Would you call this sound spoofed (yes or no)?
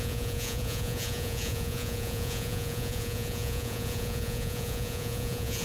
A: yes